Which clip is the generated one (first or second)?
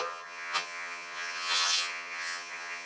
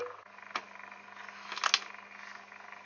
first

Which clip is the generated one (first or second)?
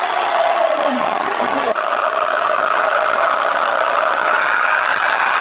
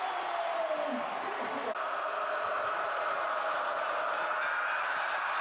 first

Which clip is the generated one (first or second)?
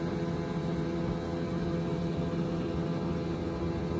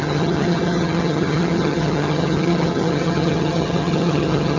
second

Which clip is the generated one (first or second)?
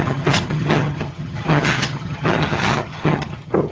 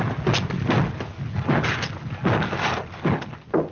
first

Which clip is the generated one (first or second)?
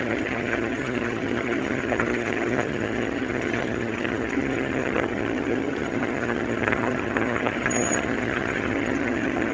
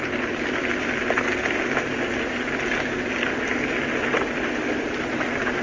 first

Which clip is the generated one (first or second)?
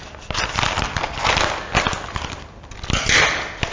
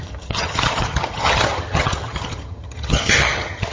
second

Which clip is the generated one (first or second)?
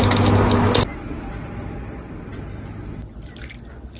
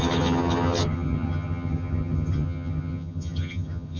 second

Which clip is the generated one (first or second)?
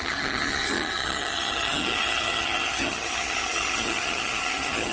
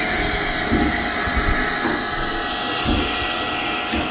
first